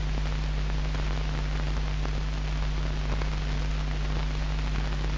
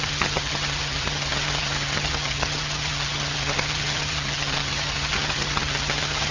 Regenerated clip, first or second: second